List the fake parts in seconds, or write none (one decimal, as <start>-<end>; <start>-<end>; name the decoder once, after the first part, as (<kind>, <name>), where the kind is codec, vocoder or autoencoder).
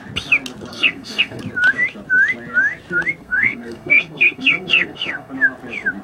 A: 0.7-1.4 (codec, SNAC); 3.2-5.3